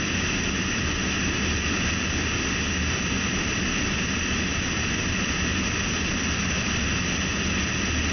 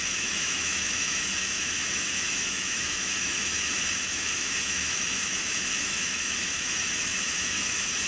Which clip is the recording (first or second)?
first